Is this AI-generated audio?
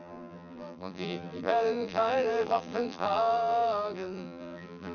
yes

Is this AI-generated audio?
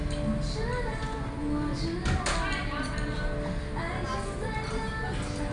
no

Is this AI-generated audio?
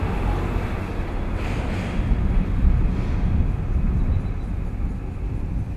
no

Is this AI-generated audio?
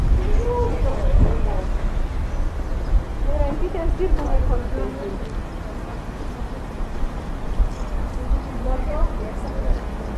no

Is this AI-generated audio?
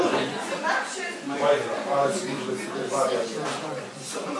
yes